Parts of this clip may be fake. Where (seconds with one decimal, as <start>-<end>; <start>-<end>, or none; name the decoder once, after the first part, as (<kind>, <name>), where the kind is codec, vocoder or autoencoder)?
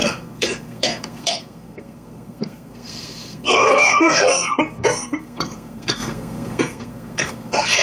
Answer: 0.0-7.8 (codec, SNAC)